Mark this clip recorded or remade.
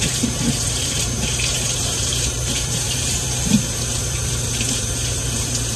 remade